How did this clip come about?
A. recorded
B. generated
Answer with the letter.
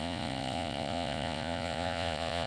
B